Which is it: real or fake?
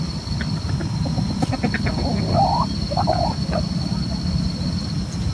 real